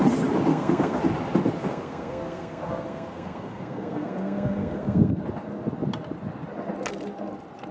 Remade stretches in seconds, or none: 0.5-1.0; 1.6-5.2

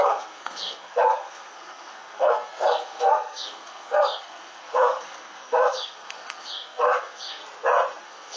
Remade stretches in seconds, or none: 0.0-7.4; 8.0-8.4

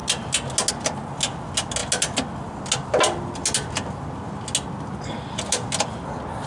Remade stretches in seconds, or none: none

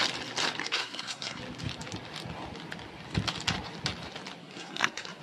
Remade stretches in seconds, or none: 0.6-1.4; 4.4-5.2

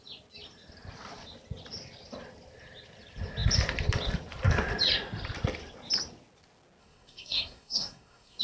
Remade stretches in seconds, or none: 6.8-8.4